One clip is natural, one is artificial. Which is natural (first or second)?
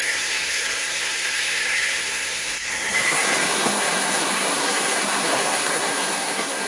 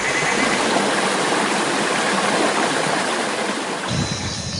second